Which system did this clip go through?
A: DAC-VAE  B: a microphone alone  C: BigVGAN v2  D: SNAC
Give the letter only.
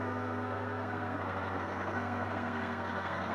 D